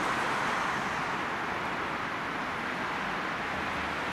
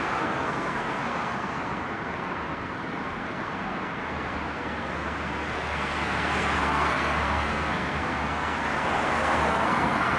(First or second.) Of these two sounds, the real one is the first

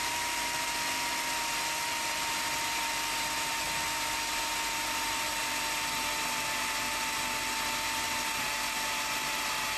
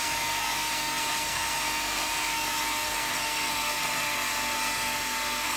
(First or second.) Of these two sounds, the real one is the first